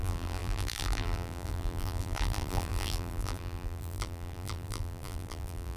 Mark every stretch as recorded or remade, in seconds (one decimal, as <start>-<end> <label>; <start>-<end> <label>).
0.0-5.8 remade